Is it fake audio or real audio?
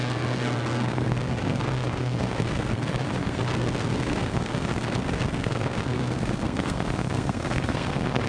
fake